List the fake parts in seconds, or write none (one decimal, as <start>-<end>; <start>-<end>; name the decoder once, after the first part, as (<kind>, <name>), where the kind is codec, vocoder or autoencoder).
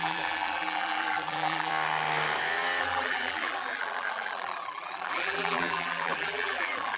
0.0-1.7 (vocoder, BigVGAN v2); 2.8-7.0